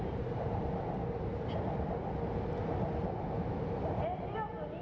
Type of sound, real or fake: real